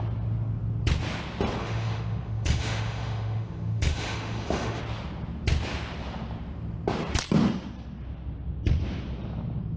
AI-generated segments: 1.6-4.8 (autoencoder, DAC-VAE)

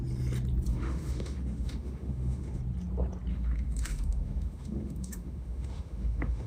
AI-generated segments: 0.7-2.6 (autoencoder, DAC-VAE); 3.3-6.5

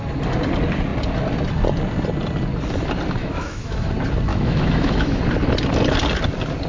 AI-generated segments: 3.2-3.9 (autoencoder, DAC-VAE); 4.3-5.2

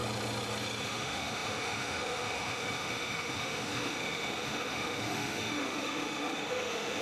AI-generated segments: 0.8-7.0 (autoencoder, DAC-VAE)

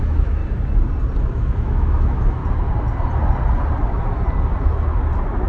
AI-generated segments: 0.0-0.4 (autoencoder, DAC-VAE); 1.2-2.4

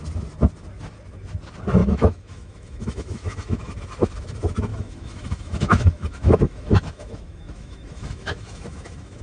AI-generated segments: 1.8-3.7 (autoencoder, DAC-VAE); 4.7-9.2